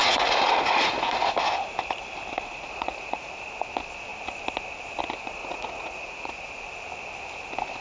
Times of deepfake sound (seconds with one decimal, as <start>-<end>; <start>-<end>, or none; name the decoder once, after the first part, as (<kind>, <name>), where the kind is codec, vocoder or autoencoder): 0.0-1.3 (vocoder, Vocos); 2.5-3.3; 5.4-6.5